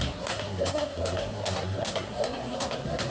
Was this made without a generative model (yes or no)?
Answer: no